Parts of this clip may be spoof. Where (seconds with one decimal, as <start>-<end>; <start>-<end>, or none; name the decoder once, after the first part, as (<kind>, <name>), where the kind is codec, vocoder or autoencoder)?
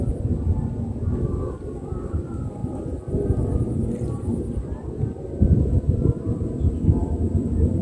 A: none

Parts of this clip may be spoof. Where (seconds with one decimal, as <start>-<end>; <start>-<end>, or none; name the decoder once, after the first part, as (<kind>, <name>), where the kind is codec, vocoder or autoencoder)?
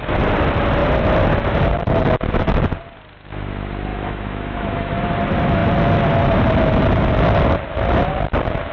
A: 3.9-5.0 (autoencoder, DAC-VAE)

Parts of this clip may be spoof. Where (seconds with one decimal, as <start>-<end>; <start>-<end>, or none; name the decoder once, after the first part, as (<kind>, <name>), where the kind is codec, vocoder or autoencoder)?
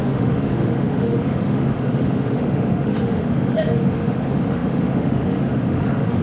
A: 0.0-6.2 (autoencoder, DAC-VAE)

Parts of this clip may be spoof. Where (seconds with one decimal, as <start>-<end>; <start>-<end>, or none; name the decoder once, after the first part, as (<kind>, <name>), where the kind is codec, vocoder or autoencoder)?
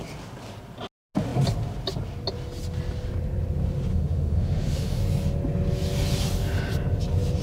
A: 3.9-5.0 (autoencoder, DAC-VAE)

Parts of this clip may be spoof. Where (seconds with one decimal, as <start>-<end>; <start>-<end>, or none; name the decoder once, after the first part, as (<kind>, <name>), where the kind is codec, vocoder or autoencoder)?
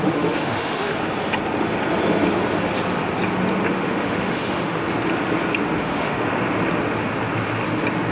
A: 0.0-0.9 (autoencoder, DAC-VAE); 3.7-4.8; 5.8-6.3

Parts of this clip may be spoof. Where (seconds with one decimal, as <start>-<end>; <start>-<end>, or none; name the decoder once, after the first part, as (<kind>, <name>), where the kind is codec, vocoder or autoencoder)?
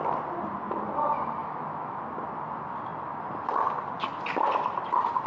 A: 1.4-2.0 (autoencoder, DAC-VAE)